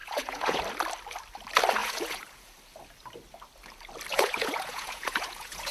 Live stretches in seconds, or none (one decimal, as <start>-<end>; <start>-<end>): 0.6-1.8; 2.5-4.1